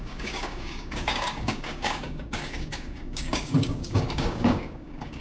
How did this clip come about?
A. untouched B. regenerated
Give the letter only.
B